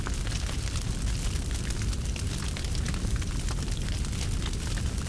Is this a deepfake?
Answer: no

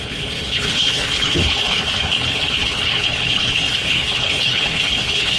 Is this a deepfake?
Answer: yes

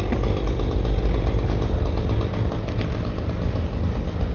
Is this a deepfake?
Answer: no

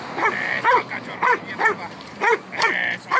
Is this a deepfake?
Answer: no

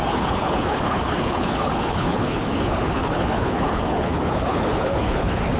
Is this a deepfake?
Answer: yes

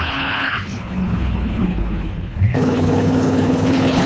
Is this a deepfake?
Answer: yes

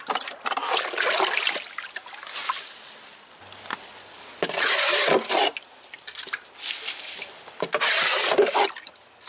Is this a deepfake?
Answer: no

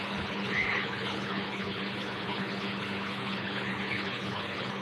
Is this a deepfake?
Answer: yes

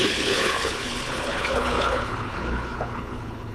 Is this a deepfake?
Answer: yes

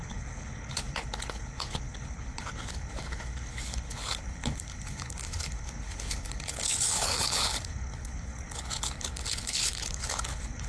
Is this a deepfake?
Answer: yes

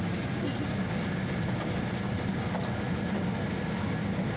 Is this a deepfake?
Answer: no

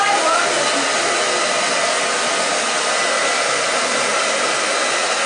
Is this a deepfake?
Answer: no